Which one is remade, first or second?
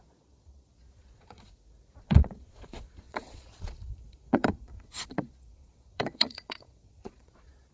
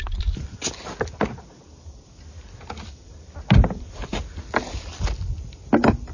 first